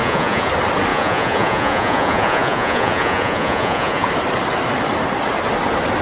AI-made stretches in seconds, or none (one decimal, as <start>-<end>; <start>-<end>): 0.0-0.5; 0.9-4.1